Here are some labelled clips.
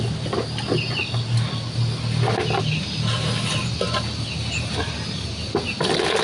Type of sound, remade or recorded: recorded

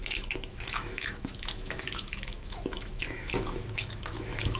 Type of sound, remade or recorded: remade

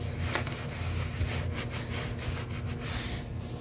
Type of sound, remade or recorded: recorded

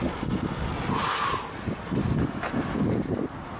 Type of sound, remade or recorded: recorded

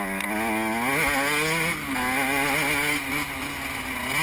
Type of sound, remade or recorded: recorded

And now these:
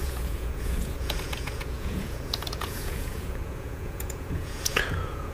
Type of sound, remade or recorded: remade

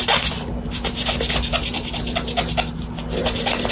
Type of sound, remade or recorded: recorded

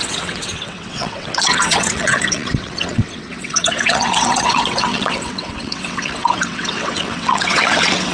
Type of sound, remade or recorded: remade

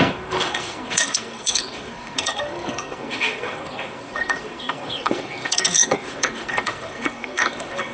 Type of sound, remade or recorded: remade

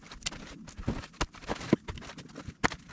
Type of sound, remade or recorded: recorded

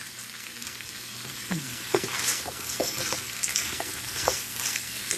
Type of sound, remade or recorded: remade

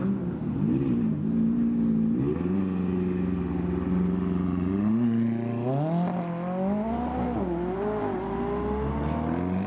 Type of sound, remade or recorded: recorded